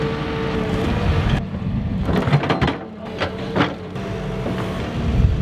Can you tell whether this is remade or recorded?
recorded